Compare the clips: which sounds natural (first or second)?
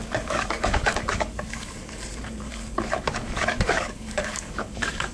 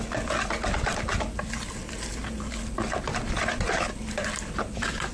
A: second